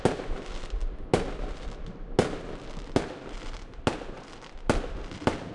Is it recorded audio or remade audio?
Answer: recorded